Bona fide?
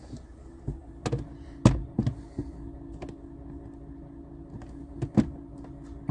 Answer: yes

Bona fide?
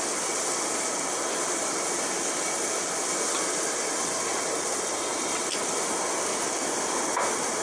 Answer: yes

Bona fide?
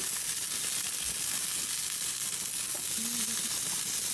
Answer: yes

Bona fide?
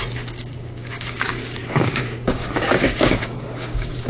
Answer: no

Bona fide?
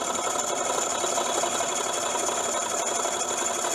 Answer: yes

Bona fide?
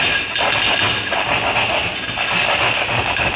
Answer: yes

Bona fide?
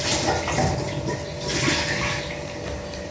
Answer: yes